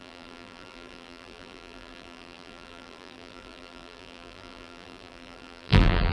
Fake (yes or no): yes